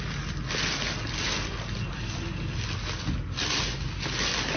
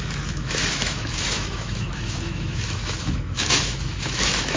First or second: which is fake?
second